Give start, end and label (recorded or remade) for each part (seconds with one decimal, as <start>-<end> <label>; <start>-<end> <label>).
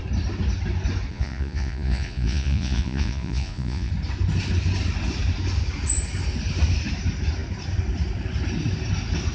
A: 0.0-1.1 recorded; 1.1-3.9 remade; 3.9-9.3 recorded